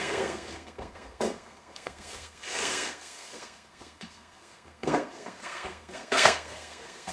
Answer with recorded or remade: remade